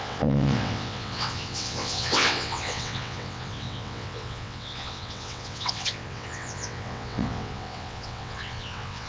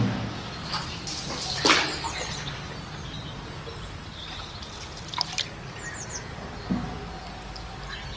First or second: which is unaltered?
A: second